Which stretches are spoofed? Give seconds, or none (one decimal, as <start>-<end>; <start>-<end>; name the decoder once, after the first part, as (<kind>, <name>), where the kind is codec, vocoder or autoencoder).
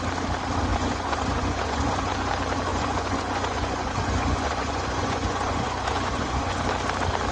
0.7-2.3 (vocoder, Vocos); 2.7-6.6